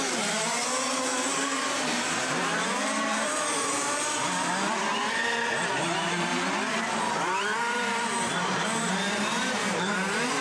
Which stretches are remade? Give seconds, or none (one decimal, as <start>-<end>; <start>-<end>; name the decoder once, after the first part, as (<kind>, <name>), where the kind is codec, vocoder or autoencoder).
0.0-6.3 (vocoder, BigVGAN v2); 7.0-10.4